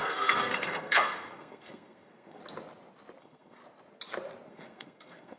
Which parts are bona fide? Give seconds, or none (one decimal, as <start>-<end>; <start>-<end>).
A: 2.4-3.2; 3.6-4.5